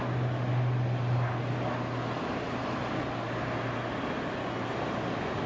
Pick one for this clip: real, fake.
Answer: real